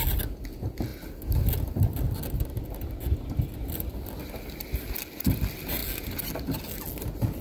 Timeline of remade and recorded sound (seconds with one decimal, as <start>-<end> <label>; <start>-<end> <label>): 0.0-7.4 recorded